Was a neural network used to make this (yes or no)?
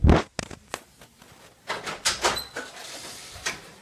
no